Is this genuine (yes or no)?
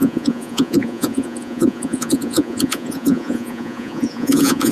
no